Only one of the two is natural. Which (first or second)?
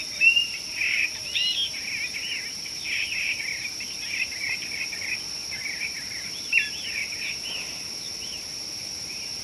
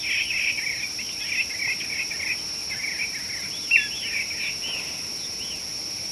second